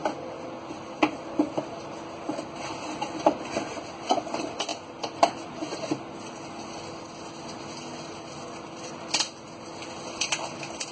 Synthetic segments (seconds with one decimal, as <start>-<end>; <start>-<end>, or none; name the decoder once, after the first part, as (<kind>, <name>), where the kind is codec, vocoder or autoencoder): none